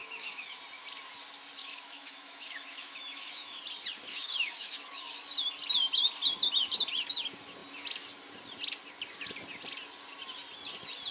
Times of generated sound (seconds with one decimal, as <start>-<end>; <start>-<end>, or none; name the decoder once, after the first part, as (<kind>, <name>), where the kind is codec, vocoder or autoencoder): 0.0-0.6 (autoencoder, DAC-VAE); 1.6-3.6; 4.1-5.2